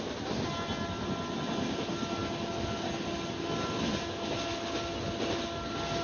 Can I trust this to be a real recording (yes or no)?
yes